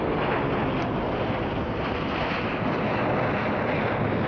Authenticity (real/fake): real